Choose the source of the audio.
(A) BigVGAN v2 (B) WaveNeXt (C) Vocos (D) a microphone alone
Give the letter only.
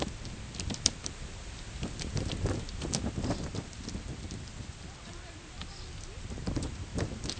D